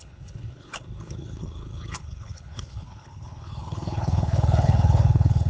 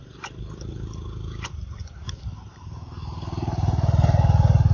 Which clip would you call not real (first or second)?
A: first